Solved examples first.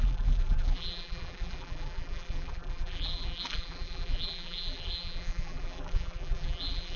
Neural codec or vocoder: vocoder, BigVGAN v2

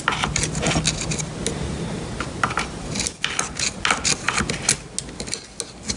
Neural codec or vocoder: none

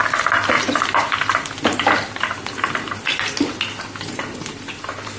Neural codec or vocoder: none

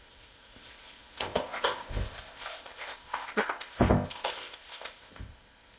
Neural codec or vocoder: codec, ZipCodec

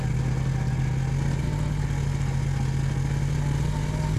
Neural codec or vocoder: none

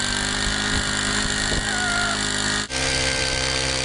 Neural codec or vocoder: none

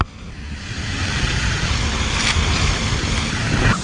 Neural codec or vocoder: none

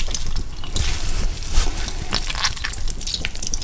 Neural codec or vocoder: none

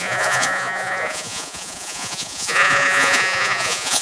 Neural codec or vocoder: vocoder, Vocos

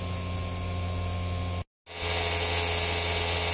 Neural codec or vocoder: none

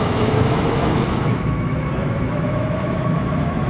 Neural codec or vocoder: autoencoder, DAC-VAE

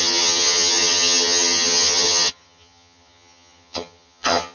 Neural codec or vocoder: vocoder, HiFi-GAN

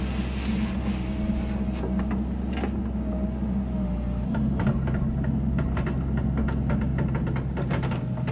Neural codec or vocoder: none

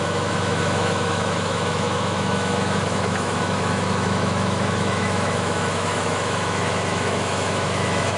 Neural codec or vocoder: autoencoder, DAC-VAE